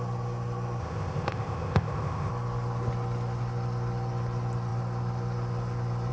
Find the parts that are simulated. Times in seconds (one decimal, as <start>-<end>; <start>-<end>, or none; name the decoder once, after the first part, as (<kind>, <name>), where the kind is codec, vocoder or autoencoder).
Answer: 0.8-2.3 (codec, ZipCodec)